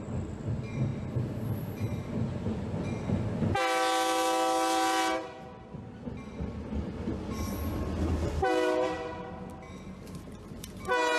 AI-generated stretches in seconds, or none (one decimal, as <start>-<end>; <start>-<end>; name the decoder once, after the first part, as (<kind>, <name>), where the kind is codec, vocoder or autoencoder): none